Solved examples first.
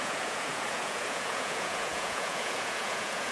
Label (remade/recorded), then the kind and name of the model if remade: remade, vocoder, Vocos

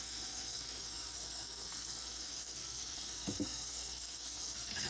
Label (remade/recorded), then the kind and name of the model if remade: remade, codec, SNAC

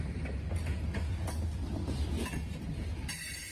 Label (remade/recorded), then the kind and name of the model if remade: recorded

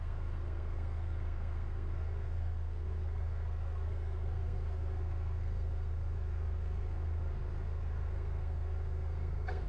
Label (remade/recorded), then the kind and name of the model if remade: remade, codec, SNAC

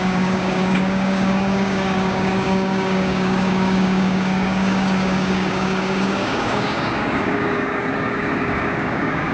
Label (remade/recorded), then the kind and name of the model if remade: remade, codec, DAC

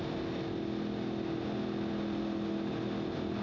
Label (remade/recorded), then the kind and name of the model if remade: recorded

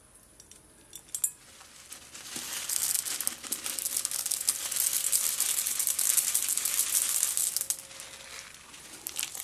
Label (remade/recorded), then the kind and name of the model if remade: recorded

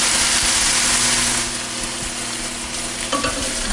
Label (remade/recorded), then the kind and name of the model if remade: recorded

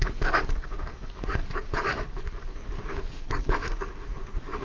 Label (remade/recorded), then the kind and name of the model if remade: remade, codec, DAC